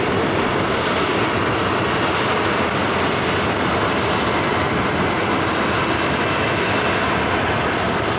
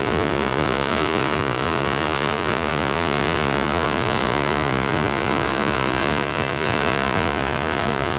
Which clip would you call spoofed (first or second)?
second